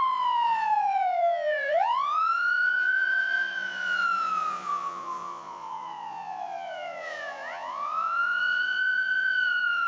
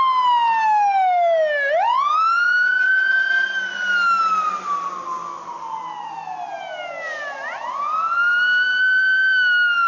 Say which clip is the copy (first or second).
first